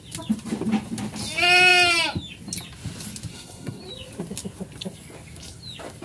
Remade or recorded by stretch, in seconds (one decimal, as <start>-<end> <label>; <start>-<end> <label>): 0.0-3.3 recorded; 3.3-3.8 remade; 3.8-6.0 recorded